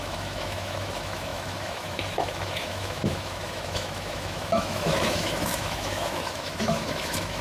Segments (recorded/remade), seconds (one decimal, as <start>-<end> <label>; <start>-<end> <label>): 0.0-7.4 remade